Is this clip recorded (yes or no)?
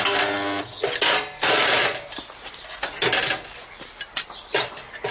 yes